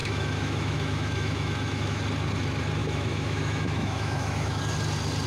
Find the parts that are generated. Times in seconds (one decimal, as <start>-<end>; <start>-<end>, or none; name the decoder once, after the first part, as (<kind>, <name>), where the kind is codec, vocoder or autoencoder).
0.0-2.0 (autoencoder, DAC-VAE); 2.8-4.6